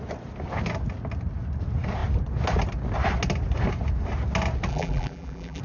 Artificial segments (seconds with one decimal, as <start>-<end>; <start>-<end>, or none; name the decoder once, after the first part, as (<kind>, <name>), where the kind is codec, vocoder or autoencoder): 4.7-5.6 (vocoder, BigVGAN v2)